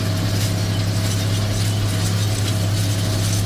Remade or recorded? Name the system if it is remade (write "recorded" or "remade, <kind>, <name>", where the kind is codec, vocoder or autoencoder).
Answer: recorded